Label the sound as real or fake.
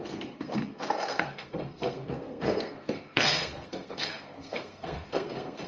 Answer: fake